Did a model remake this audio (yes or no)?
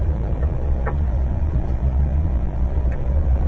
yes